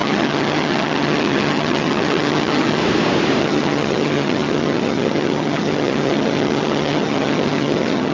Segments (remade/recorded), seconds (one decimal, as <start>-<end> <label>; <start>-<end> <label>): 0.0-2.8 remade; 2.8-3.4 recorded; 3.4-8.1 remade

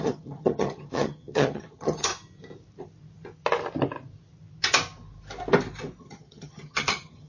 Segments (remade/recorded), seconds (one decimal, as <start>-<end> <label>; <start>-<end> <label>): 0.0-2.1 remade; 2.1-6.0 recorded; 6.0-7.3 remade

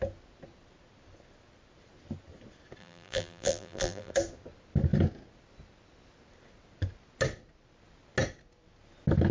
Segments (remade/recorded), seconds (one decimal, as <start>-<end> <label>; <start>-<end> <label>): 0.0-2.8 recorded; 2.8-4.1 remade; 4.1-9.3 recorded